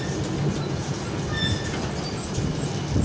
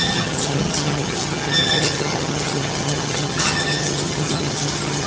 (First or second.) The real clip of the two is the first